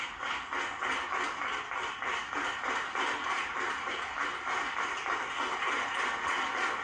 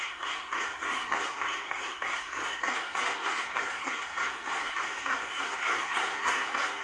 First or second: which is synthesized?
second